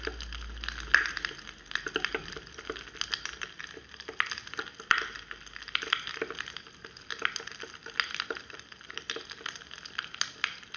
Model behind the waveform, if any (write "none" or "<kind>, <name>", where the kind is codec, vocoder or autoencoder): none